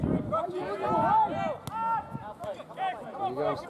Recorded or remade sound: recorded